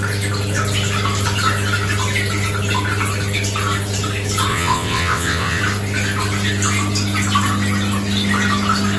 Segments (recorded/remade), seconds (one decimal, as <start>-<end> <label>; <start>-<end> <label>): 0.0-4.5 recorded; 4.5-5.6 remade; 5.6-9.0 recorded